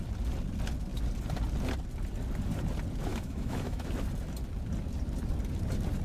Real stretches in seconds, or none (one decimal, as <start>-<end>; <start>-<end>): 0.0-3.1; 3.9-6.0